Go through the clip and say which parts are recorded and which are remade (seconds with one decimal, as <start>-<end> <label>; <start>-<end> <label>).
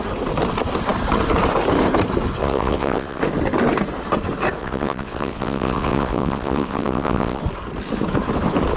0.0-2.4 recorded; 2.4-3.2 remade; 3.2-4.6 recorded; 4.6-7.4 remade; 7.4-8.8 recorded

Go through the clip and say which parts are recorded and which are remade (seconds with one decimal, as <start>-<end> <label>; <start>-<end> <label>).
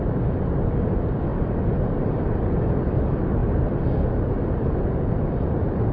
0.0-5.9 recorded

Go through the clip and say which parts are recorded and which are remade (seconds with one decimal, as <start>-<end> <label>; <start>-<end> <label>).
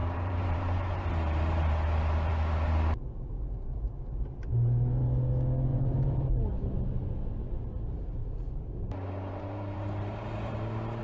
0.0-1.1 remade; 1.1-5.7 recorded; 5.7-6.3 remade; 6.3-8.2 recorded; 8.2-11.0 remade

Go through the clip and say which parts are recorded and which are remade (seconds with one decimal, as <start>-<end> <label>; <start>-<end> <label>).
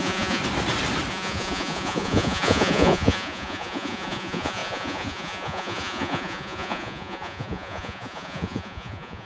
0.0-0.4 remade; 0.4-1.1 recorded; 1.1-9.3 remade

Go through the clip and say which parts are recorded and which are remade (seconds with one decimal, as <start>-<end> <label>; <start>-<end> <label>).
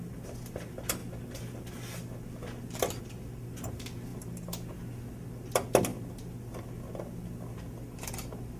0.0-8.6 recorded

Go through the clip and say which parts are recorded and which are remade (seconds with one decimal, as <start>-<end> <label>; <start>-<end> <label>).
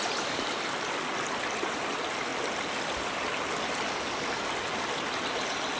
0.0-5.8 recorded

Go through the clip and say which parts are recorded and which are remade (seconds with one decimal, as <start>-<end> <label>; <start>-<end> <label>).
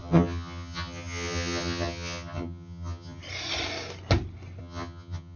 0.0-3.2 remade; 3.2-4.6 recorded; 4.6-5.4 remade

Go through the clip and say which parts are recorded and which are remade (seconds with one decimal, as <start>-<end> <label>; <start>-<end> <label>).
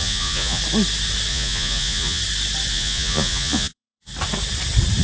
0.0-0.6 remade; 0.6-1.3 recorded; 1.3-2.2 remade; 2.2-2.7 recorded; 2.7-4.1 remade; 4.1-5.0 recorded